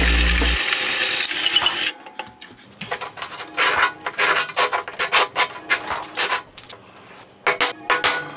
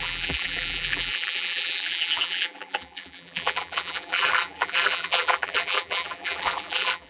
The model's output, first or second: second